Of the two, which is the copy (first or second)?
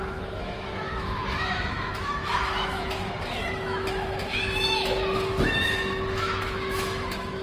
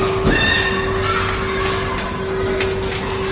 first